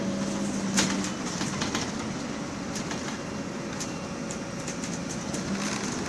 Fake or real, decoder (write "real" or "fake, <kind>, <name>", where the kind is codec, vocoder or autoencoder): real